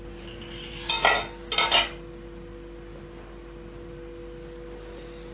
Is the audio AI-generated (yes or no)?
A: no